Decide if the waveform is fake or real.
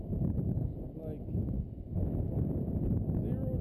real